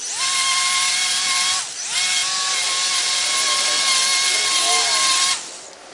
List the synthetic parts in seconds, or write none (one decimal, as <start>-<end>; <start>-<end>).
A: none